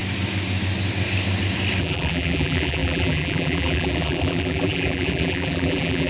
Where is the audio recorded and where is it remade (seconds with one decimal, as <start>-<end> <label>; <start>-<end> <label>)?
0.0-1.8 recorded; 1.8-6.1 remade